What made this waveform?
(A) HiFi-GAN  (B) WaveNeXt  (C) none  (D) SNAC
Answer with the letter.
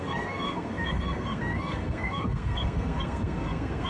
D